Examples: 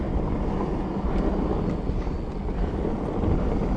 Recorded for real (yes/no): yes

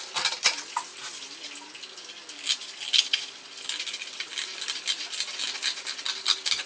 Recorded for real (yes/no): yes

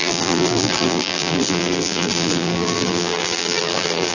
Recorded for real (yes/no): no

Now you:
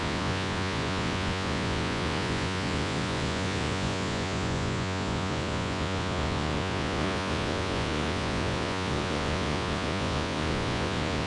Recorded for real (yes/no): no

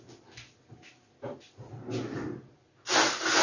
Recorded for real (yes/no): yes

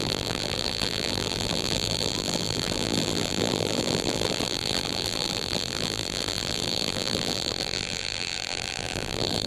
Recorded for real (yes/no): no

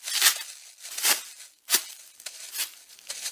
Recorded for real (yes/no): yes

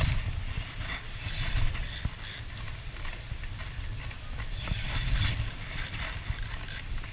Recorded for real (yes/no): yes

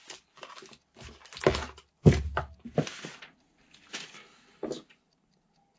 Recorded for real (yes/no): yes